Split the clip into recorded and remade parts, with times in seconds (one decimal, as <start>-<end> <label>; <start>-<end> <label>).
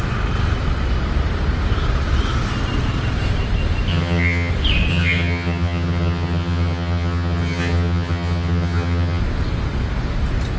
0.0-3.9 recorded; 3.9-4.5 remade; 4.5-4.9 recorded; 4.9-9.2 remade; 9.2-10.6 recorded